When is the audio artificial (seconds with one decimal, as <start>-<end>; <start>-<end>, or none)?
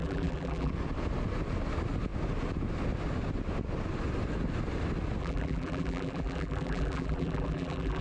0.0-0.7; 5.2-8.0